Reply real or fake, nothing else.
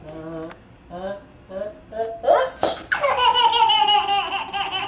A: real